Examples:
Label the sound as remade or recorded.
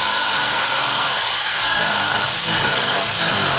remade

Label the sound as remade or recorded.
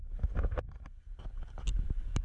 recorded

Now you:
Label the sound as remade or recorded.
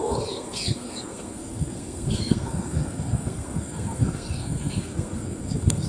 remade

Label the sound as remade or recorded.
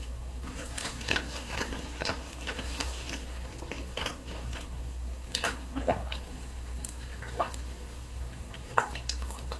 remade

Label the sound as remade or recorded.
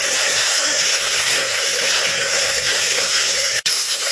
remade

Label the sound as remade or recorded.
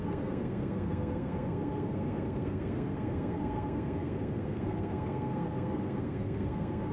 remade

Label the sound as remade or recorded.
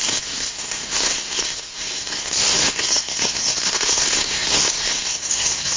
remade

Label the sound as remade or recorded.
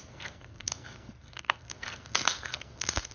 remade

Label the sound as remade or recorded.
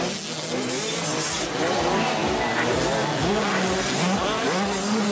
recorded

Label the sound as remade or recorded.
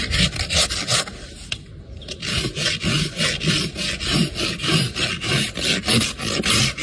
recorded